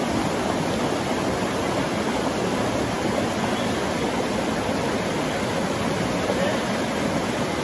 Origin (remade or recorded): recorded